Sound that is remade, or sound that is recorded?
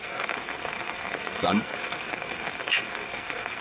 remade